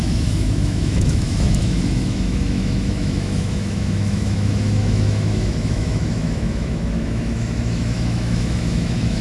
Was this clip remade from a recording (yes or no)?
yes